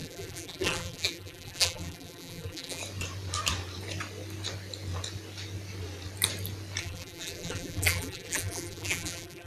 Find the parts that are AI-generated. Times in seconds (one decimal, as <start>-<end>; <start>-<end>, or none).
0.0-2.8; 6.8-9.5